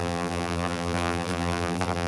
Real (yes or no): no